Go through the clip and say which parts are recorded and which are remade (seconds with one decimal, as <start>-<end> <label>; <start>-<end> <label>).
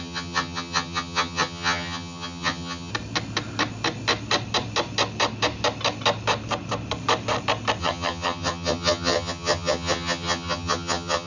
0.0-2.9 remade; 2.9-7.8 recorded; 7.8-11.3 remade